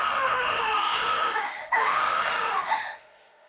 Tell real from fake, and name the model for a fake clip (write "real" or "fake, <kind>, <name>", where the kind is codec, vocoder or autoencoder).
fake, autoencoder, DAC-VAE